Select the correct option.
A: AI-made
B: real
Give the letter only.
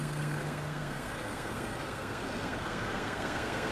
A